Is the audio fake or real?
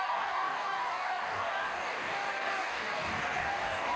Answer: fake